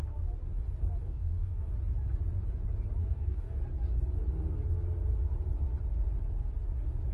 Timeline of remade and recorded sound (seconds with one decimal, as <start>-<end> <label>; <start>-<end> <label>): 0.0-1.0 recorded; 1.0-1.7 remade; 1.7-3.0 recorded; 3.0-3.6 remade; 3.6-7.1 recorded